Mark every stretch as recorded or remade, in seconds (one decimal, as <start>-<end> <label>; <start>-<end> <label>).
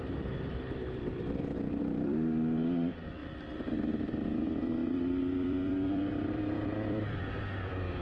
0.0-3.2 remade; 3.2-4.0 recorded; 4.0-8.0 remade